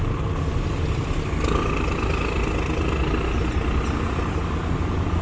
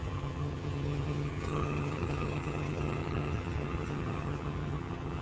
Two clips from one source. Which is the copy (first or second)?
second